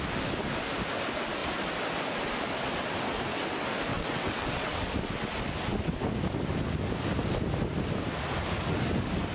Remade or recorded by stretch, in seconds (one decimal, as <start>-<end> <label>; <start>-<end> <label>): 0.0-3.9 recorded; 3.9-4.8 remade; 4.8-9.3 recorded